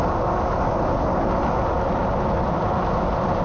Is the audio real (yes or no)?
yes